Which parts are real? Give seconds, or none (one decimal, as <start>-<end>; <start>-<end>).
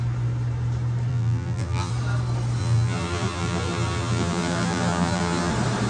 0.0-1.1; 1.9-2.6; 5.5-5.9